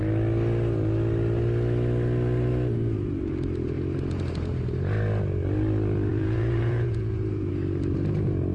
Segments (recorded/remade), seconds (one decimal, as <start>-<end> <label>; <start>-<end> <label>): 0.0-6.1 recorded; 6.1-7.5 remade; 7.5-8.5 recorded